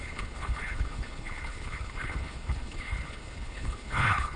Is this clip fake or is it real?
fake